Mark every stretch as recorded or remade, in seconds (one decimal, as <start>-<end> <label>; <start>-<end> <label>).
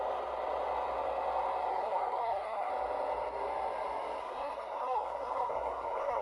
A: 0.0-1.7 recorded; 1.7-2.7 remade; 2.7-4.2 recorded; 4.2-6.2 remade